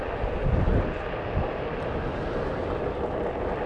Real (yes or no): yes